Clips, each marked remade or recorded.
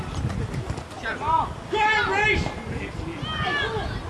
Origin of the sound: recorded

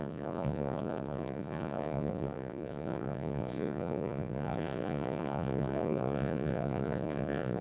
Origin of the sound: remade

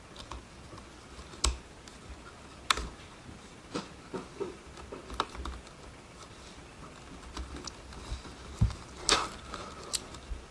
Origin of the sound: recorded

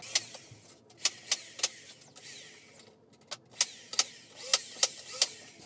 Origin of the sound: recorded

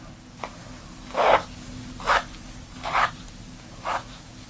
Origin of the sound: recorded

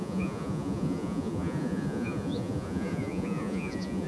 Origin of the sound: remade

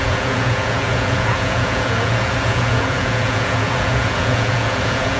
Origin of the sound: remade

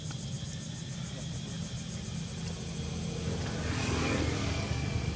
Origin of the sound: recorded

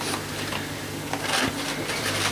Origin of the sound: recorded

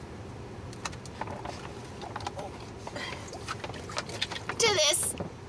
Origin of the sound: recorded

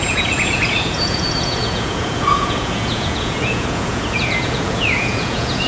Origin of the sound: remade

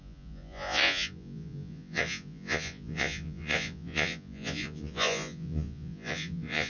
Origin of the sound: remade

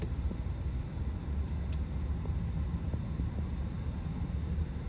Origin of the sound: recorded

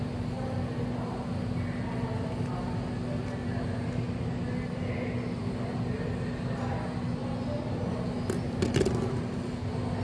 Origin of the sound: recorded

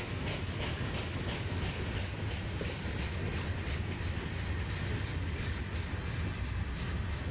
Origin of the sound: recorded